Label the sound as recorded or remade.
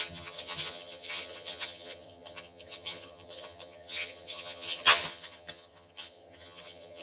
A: remade